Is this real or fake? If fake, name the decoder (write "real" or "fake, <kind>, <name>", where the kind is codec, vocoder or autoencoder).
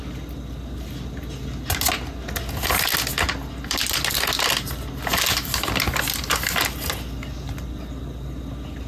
real